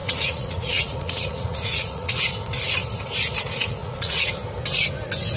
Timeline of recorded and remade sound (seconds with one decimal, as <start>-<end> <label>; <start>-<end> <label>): 0.0-2.2 remade; 2.2-3.8 recorded; 3.8-4.3 remade; 4.3-5.4 recorded